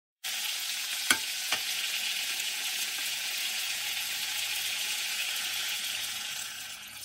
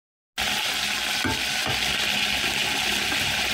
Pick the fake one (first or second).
first